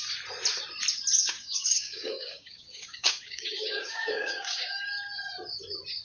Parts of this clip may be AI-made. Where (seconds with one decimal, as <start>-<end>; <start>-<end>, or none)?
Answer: 1.2-4.8